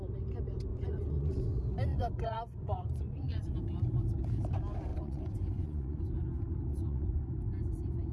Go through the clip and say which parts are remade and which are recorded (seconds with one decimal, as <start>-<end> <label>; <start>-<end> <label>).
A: 0.0-0.7 recorded; 0.7-1.4 remade; 1.4-1.9 recorded; 1.9-3.5 remade; 3.5-4.9 recorded; 4.9-6.0 remade; 6.0-6.7 recorded; 6.7-7.3 remade; 7.3-8.1 recorded